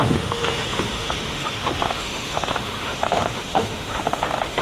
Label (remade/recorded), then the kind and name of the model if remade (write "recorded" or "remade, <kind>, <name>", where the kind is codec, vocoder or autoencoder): remade, autoencoder, DAC-VAE